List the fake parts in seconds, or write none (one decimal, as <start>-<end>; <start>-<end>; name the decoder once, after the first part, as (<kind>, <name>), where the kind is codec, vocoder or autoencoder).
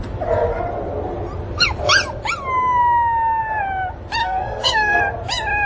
4.2-5.0 (codec, SNAC)